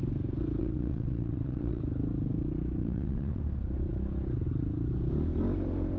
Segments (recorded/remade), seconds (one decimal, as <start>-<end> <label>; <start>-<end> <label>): 0.0-0.6 recorded; 0.6-1.8 remade; 1.8-2.8 recorded; 2.8-3.4 remade; 3.4-6.0 recorded